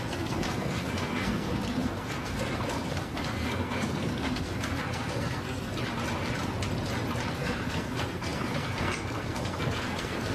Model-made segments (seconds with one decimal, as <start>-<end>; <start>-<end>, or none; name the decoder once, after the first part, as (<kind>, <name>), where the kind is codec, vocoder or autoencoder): 0.0-5.7 (codec, SNAC); 7.3-10.3